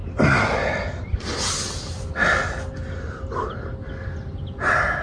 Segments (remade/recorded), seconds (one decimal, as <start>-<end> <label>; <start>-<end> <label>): 0.0-5.0 recorded